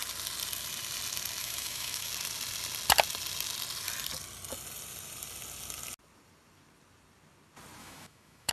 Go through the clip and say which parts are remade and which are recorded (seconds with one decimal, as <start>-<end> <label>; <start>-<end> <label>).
0.0-1.4 recorded; 1.4-2.1 remade; 2.1-7.8 recorded; 7.8-8.5 remade